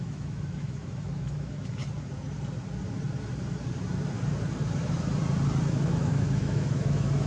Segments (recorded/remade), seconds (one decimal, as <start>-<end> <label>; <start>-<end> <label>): 0.0-1.8 remade; 1.8-5.9 recorded; 5.9-7.3 remade